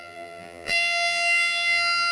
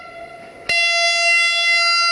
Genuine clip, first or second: second